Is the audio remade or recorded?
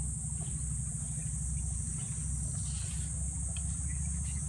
recorded